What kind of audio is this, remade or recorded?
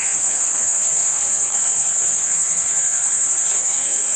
remade